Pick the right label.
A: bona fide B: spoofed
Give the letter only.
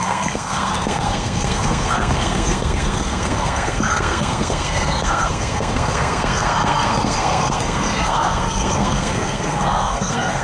B